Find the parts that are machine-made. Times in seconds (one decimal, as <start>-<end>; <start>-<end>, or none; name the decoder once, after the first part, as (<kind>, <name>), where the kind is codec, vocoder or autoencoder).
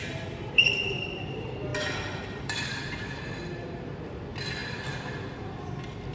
0.0-4.6 (vocoder, BigVGAN v2); 5.4-6.1